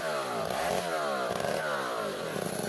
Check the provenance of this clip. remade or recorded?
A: recorded